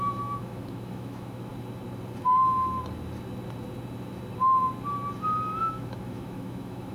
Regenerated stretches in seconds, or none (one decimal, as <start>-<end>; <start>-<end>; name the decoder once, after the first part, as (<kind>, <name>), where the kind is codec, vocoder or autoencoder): 0.0-1.5 (autoencoder, DAC-VAE); 5.6-6.9